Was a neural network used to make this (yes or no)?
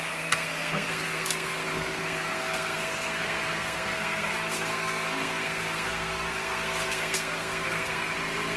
yes